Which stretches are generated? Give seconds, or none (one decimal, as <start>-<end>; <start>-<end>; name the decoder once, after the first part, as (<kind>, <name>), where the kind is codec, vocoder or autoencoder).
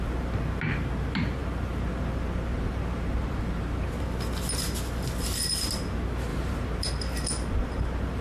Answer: 2.5-4.0 (vocoder, BigVGAN v2); 6.3-6.9